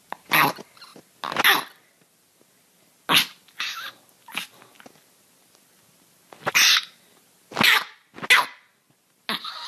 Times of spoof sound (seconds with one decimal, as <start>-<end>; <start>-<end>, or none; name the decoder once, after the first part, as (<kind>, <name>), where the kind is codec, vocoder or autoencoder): none